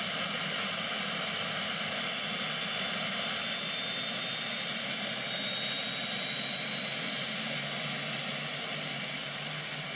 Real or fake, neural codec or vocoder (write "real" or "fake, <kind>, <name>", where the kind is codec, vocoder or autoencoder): real